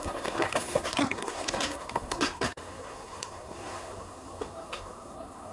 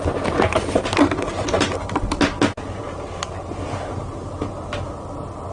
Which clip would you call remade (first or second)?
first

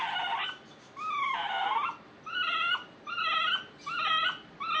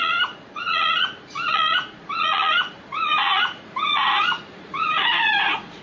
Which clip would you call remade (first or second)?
second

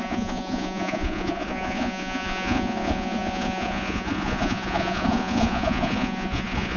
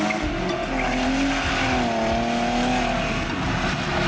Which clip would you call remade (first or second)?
first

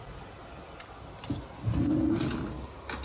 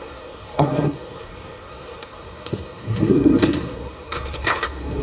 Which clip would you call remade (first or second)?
second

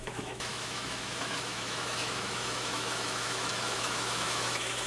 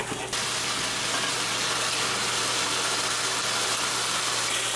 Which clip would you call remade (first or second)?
first